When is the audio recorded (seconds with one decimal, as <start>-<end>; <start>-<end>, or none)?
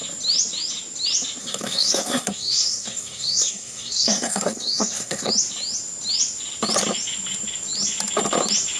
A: 0.0-1.4; 5.3-8.8